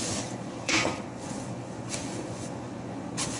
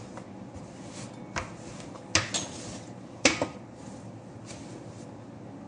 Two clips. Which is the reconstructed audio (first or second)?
first